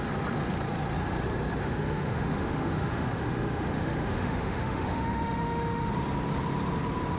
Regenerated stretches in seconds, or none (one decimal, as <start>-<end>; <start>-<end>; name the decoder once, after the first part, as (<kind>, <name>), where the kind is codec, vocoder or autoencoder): 1.6-5.9 (autoencoder, DAC-VAE)